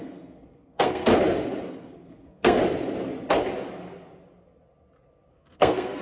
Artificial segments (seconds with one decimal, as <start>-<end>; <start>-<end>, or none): 0.0-1.1; 1.7-2.6; 5.3-6.0